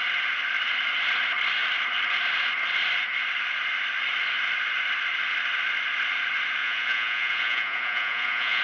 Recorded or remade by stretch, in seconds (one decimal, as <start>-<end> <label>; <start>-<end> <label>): 0.0-6.6 recorded; 6.6-8.6 remade